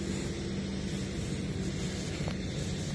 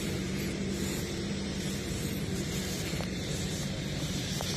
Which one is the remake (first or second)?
second